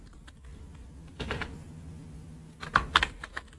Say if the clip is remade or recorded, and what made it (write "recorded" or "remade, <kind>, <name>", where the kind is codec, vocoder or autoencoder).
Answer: recorded